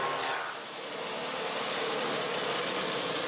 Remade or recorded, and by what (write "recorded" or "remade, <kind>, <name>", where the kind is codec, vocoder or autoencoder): recorded